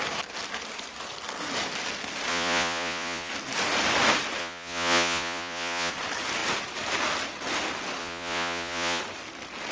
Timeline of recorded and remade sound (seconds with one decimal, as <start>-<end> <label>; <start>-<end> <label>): 0.0-2.3 recorded; 2.3-3.3 remade; 3.3-4.4 recorded; 4.4-5.9 remade; 5.9-8.0 recorded; 8.0-9.0 remade; 9.0-9.7 recorded